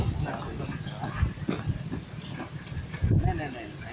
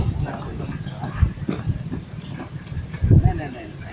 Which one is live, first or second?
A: first